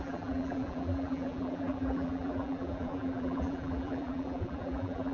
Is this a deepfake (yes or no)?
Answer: yes